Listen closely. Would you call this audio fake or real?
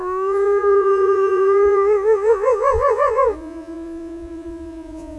fake